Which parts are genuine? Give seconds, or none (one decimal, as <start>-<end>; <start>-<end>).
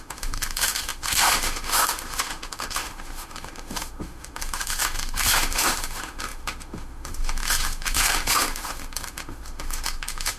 none